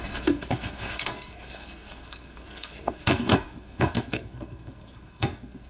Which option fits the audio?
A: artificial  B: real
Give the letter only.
A